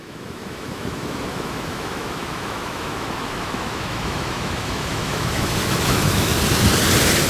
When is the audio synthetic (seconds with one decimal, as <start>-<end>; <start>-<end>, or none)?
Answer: 0.0-6.3